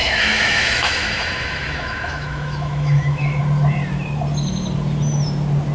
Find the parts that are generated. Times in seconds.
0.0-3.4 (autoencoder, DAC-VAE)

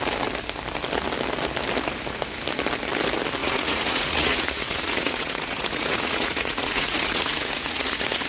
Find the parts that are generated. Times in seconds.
3.4-8.3 (vocoder, Vocos)

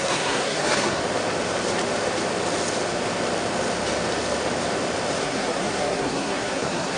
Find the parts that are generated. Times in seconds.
0.0-1.0 (codec, SNAC); 5.2-7.0

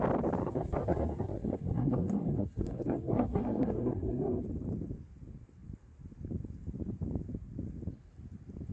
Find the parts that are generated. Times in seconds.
0.4-4.4 (codec, SNAC)

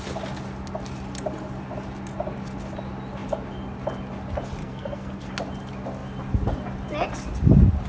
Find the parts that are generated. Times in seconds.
4.6-5.3 (codec, SNAC)

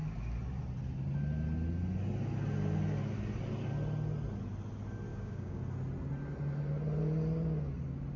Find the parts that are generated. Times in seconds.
5.1-5.6 (codec, DAC)